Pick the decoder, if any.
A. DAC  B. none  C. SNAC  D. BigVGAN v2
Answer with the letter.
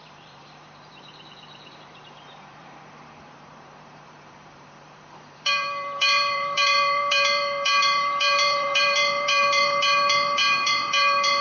D